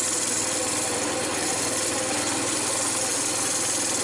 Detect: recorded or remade recorded